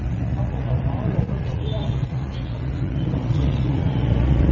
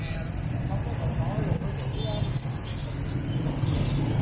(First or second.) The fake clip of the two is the first